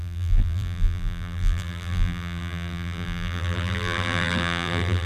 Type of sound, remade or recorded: remade